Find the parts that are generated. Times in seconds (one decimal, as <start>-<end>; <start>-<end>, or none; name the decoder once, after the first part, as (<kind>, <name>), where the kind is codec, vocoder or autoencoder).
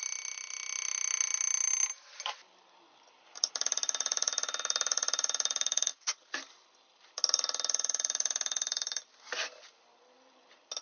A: none